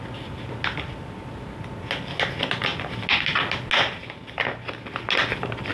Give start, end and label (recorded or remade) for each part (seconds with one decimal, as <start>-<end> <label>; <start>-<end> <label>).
0.0-5.7 recorded